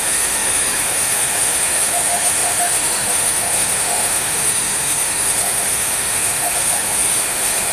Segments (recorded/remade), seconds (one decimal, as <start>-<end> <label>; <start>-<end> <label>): 0.0-7.7 remade